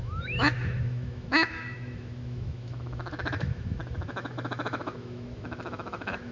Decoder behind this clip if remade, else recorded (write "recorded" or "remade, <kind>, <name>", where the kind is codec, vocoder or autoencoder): remade, autoencoder, DAC-VAE